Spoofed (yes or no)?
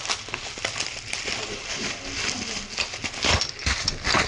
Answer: no